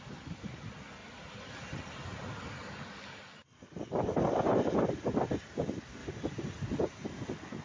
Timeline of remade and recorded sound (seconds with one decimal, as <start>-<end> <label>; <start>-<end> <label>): 0.0-7.6 recorded